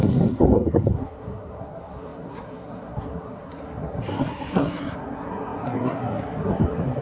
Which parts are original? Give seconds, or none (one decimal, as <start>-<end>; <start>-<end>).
none